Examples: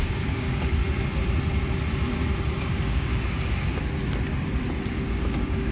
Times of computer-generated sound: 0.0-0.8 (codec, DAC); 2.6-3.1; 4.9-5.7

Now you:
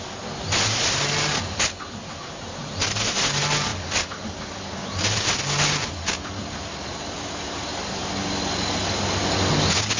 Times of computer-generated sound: none

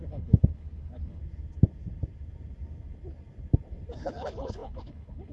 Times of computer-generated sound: 0.0-1.2 (codec, HILCodec); 4.0-5.3

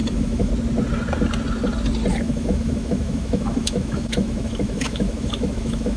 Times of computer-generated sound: 0.0-0.5 (autoencoder, DAC-VAE); 2.1-6.0

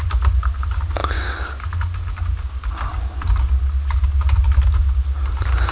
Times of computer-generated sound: none